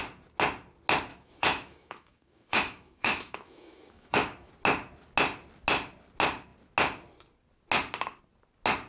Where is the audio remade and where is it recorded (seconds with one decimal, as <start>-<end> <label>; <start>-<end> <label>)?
0.0-1.1 recorded; 1.1-4.5 remade; 4.5-8.9 recorded